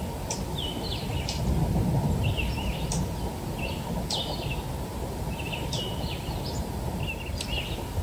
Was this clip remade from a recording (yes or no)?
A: no